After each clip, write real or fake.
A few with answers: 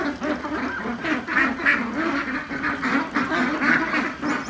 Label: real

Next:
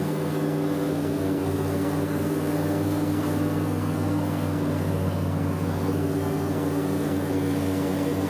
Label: fake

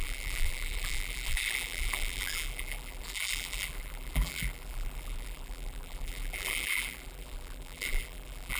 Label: fake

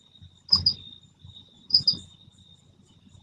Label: real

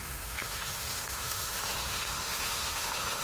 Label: fake